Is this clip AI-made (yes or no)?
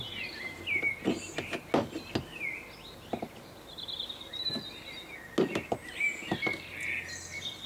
no